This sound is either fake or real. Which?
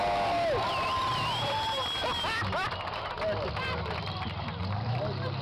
real